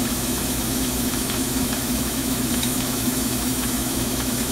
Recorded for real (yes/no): no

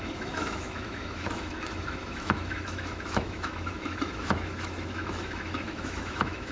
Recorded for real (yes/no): no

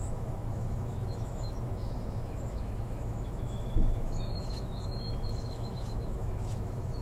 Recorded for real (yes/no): no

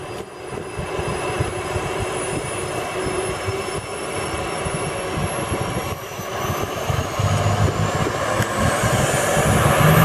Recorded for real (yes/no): yes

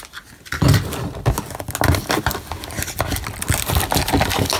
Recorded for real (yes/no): yes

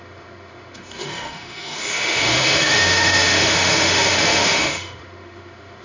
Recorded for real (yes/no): no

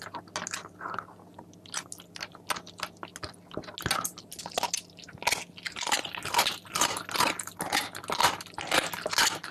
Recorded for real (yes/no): yes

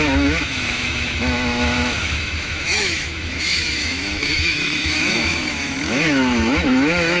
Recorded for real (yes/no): no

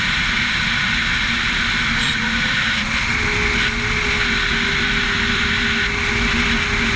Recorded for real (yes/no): yes